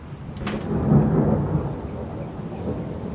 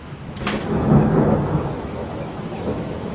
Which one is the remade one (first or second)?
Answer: second